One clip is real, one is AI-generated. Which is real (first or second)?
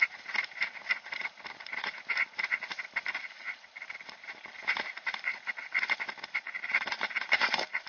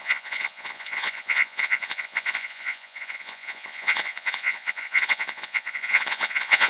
first